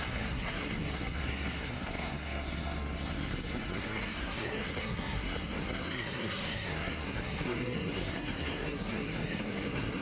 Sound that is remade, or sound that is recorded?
remade